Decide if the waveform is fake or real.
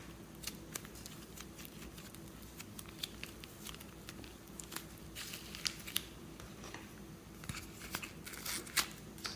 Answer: real